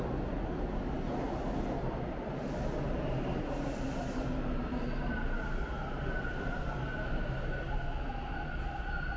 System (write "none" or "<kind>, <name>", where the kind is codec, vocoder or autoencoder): none